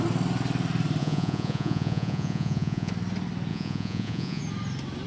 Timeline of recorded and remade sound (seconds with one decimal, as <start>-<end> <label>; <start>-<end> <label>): 0.0-1.0 recorded; 1.0-2.9 remade; 2.9-3.5 recorded; 3.5-4.4 remade; 4.4-5.1 recorded